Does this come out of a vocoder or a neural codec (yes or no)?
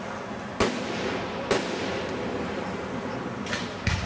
no